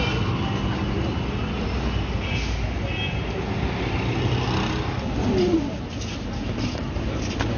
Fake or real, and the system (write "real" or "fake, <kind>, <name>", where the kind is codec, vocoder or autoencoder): real